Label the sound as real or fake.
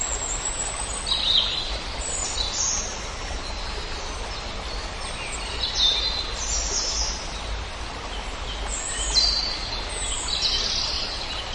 real